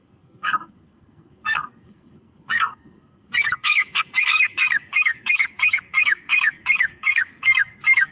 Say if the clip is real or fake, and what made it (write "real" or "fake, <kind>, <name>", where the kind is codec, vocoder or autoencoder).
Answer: fake, codec, SNAC